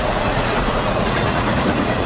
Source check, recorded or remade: remade